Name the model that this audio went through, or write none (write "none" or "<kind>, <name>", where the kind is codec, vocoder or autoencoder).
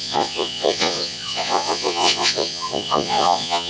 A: vocoder, Vocos